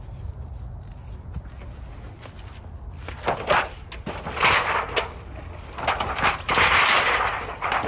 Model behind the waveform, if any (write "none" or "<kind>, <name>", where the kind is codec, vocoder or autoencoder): none